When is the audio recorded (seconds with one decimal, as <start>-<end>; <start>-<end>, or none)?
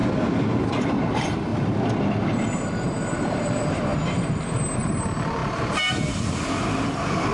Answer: 0.0-0.7; 1.5-2.7; 3.9-4.8